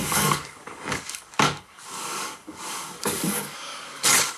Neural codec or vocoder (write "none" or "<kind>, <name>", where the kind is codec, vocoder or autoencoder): codec, DAC